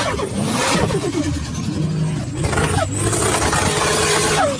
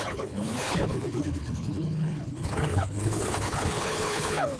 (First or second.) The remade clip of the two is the second